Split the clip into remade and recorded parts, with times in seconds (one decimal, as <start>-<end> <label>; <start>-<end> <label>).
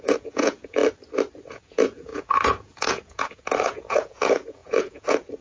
0.0-0.8 remade; 0.8-1.5 recorded; 1.5-5.4 remade